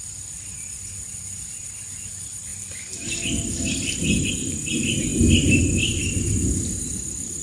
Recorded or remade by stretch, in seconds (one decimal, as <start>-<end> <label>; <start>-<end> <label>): 0.0-7.4 recorded

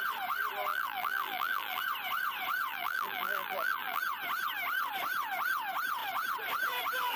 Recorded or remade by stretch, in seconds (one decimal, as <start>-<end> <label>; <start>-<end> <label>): 0.0-0.7 recorded; 0.7-1.8 remade; 1.8-2.7 recorded; 2.7-4.0 remade; 4.0-7.2 recorded

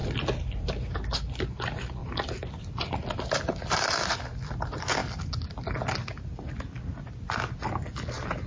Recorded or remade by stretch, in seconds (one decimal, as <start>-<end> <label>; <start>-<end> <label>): 0.0-2.0 recorded; 2.0-3.3 remade; 3.3-8.5 recorded

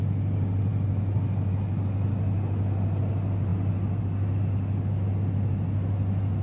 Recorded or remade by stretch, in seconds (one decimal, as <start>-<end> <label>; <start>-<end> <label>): 0.0-6.4 recorded

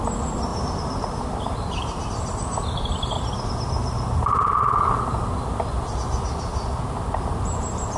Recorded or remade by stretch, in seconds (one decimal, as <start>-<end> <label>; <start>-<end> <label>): 0.0-0.5 recorded; 0.5-2.1 remade; 2.1-3.8 recorded; 3.8-4.5 remade; 4.5-8.0 recorded

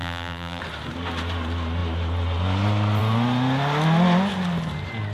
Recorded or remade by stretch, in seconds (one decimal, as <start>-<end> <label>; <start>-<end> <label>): 0.0-0.6 remade; 0.6-5.1 recorded